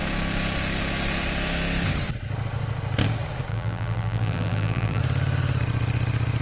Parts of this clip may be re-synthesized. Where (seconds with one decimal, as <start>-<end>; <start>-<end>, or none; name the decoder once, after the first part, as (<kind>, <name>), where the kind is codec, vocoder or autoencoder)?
3.5-5.0 (vocoder, BigVGAN v2)